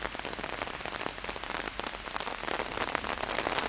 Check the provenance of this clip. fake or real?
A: real